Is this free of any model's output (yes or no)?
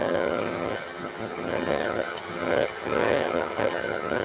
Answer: no